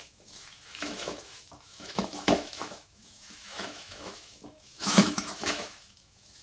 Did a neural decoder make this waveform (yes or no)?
yes